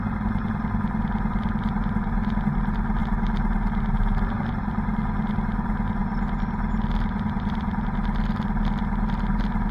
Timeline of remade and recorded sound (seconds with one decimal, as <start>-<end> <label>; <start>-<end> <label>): 0.0-9.7 recorded